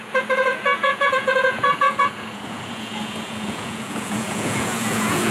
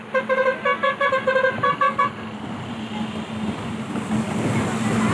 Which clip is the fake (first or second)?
first